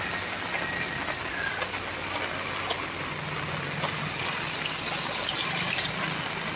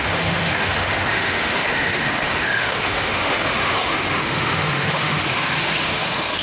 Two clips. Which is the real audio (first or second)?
first